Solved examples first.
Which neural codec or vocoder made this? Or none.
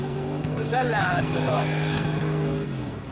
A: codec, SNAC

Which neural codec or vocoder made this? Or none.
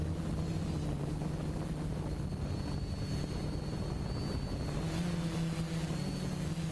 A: none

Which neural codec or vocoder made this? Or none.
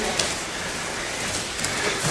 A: vocoder, BigVGAN v2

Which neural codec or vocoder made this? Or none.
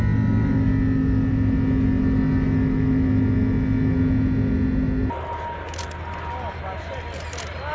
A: none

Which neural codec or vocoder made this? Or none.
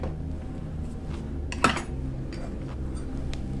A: none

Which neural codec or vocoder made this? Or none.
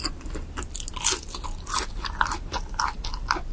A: none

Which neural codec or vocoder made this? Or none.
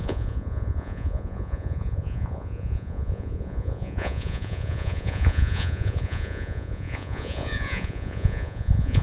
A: vocoder, Vocos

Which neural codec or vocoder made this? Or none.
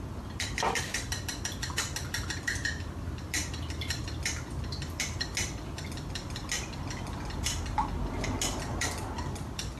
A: none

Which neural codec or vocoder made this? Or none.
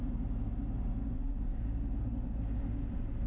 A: none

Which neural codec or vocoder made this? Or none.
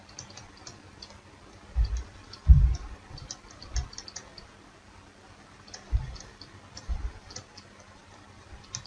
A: none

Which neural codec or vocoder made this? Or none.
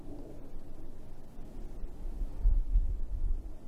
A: none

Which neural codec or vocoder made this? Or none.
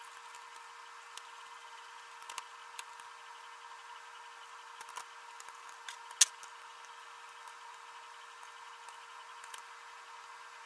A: none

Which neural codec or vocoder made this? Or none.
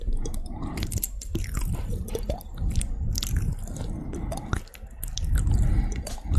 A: none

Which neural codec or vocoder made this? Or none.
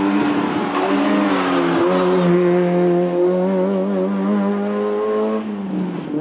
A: none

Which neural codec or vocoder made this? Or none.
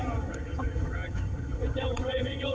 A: vocoder, HiFi-GAN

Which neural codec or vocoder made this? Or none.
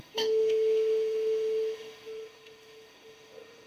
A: autoencoder, DAC-VAE